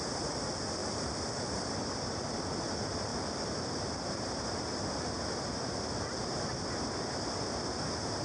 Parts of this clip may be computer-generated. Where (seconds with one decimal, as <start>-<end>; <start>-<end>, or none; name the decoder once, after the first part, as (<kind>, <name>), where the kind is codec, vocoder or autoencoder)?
0.8-1.6 (vocoder, BigVGAN v2); 3.1-3.7